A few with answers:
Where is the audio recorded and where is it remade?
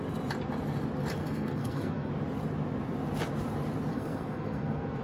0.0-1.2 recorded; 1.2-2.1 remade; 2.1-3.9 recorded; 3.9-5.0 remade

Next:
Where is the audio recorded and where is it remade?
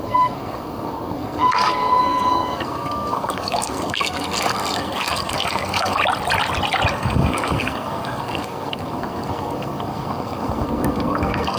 0.0-6.0 remade; 6.0-6.9 recorded; 6.9-11.6 remade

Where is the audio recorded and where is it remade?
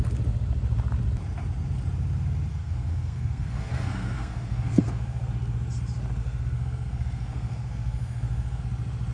0.0-2.5 recorded; 2.5-5.3 remade; 5.3-6.2 recorded; 6.2-8.6 remade; 8.6-9.1 recorded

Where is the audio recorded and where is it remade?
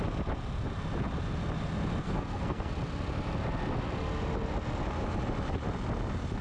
0.0-2.0 recorded; 2.0-2.7 remade; 2.7-6.4 recorded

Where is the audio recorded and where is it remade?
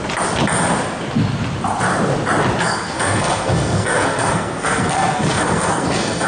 0.0-2.6 recorded; 2.6-6.3 remade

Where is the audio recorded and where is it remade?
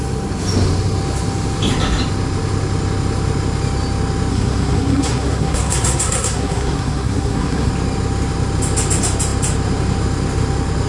0.0-4.3 recorded; 4.3-7.7 remade; 7.7-10.9 recorded